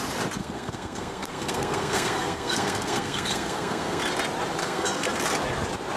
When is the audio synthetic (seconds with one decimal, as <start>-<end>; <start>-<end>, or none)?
0.4-4.0; 4.6-5.1